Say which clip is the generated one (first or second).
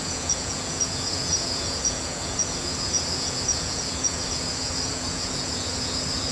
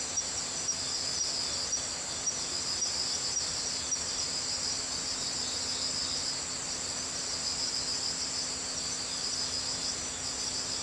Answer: first